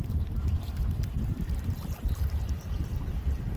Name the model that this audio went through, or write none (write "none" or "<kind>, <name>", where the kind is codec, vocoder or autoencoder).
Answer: vocoder, BigVGAN v2